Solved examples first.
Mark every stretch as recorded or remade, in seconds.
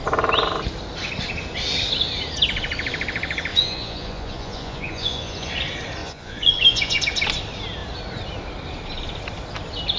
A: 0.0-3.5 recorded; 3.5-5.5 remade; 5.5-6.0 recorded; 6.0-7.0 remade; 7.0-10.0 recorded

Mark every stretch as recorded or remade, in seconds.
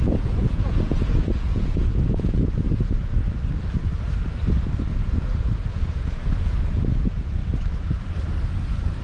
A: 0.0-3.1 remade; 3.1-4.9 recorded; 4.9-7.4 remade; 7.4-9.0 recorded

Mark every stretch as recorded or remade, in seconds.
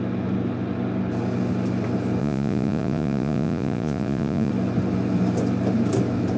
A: 0.0-2.2 recorded; 2.2-4.5 remade; 4.5-6.4 recorded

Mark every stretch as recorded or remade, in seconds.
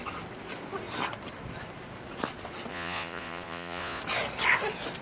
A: 0.0-2.7 recorded; 2.7-4.0 remade; 4.0-5.0 recorded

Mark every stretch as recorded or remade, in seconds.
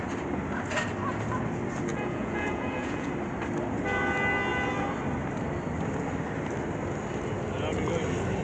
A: 0.0-1.9 recorded; 1.9-3.1 remade; 3.1-8.4 recorded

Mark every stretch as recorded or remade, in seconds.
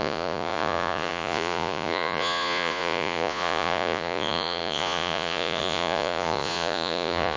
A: 0.0-7.4 remade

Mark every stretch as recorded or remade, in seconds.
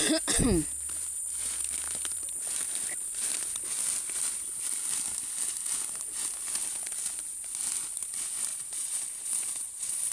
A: 0.0-8.5 recorded; 8.5-10.1 remade